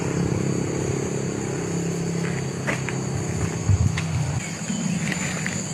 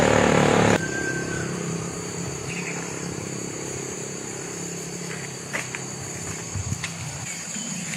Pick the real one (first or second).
first